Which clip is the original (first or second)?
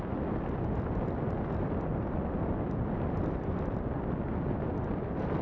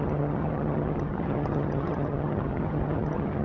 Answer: first